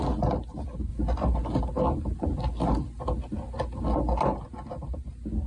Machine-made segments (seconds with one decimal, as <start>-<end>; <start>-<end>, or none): none